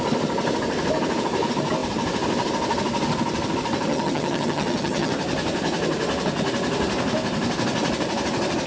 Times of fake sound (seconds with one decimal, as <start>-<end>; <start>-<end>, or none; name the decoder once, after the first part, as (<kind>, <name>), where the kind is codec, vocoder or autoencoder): 3.9-5.1 (vocoder, HiFi-GAN)

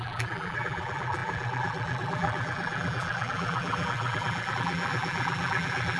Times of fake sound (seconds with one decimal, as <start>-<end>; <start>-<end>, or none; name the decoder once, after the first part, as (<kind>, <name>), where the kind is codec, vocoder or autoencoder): 0.0-6.0 (vocoder, BigVGAN v2)

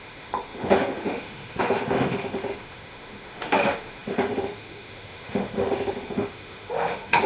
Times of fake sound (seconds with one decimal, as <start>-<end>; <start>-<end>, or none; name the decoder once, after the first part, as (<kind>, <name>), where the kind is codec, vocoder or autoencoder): 0.0-7.3 (autoencoder, DAC-VAE)

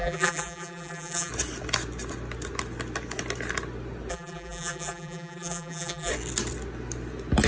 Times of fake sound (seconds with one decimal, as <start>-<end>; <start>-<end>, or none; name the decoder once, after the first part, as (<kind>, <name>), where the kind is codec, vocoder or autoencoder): 0.0-1.3 (vocoder, BigVGAN v2); 4.1-6.1

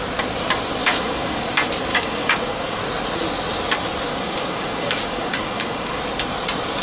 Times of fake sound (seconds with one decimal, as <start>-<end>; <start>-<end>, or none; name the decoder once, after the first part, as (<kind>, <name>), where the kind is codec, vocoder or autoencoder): 0.8-1.4 (codec, DAC); 1.9-2.8; 4.1-6.0

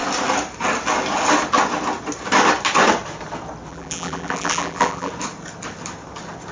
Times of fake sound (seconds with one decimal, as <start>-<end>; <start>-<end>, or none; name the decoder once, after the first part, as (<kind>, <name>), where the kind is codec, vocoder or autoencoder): 3.7-5.1 (vocoder, BigVGAN v2)

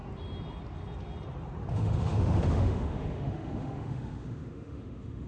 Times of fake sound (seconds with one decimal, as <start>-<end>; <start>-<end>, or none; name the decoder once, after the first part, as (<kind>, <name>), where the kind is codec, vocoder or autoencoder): 1.7-5.3 (autoencoder, DAC-VAE)

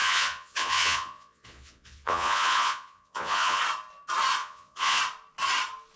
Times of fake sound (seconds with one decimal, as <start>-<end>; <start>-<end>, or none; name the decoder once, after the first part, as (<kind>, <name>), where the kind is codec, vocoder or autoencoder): 0.0-3.6 (vocoder, Vocos); 4.4-5.0